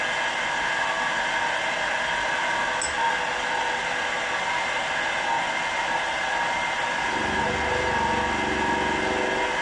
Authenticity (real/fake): real